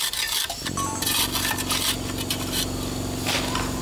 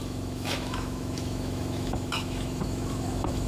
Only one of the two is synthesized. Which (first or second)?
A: second